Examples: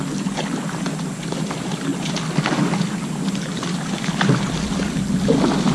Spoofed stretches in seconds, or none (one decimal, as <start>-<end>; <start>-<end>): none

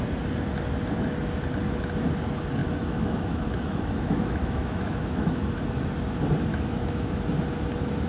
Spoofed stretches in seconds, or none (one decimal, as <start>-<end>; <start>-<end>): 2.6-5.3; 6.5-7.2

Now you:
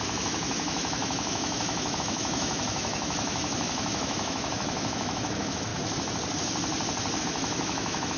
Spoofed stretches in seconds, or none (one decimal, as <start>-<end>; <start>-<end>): 0.0-5.7; 7.2-8.2